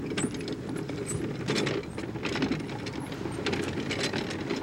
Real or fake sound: real